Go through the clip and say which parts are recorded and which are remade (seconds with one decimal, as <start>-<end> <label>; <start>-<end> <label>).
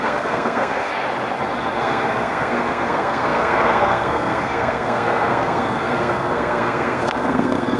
0.0-0.9 remade; 0.9-1.8 recorded; 1.8-7.8 remade